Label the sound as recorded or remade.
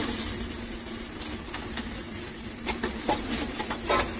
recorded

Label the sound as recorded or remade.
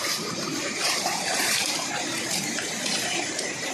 remade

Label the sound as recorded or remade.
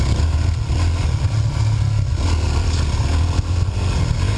recorded